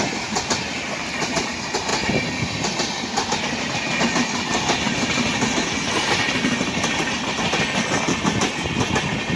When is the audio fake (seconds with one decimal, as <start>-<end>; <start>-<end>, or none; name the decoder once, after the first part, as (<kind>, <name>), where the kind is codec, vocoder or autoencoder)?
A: none